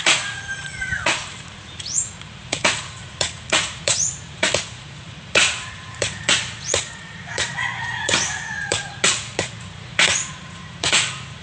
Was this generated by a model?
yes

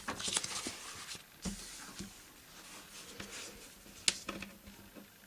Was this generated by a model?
no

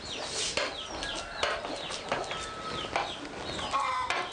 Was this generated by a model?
no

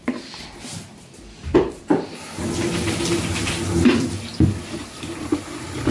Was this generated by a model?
no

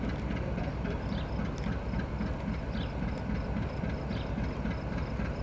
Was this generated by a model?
no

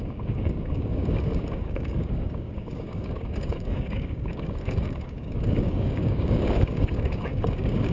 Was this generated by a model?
yes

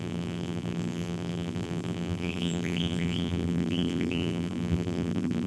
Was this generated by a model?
yes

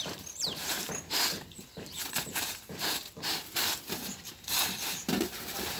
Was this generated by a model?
yes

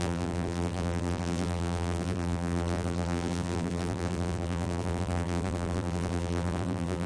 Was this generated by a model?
yes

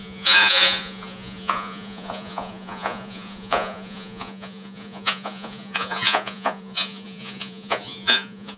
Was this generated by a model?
yes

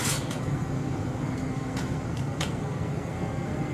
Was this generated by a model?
yes